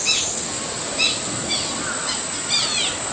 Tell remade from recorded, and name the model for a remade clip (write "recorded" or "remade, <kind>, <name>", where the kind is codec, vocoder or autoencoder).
recorded